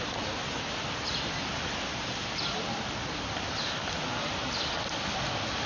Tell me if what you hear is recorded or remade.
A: recorded